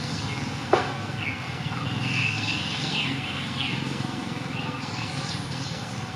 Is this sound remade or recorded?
remade